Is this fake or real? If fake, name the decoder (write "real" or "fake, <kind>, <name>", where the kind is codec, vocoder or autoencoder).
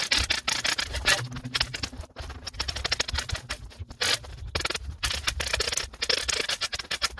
real